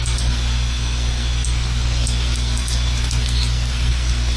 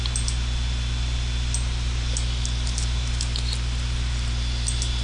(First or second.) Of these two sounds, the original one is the second